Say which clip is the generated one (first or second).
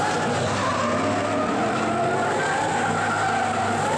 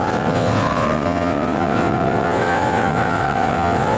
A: second